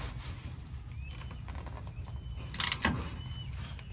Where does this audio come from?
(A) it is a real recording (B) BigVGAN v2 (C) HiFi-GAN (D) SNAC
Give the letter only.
A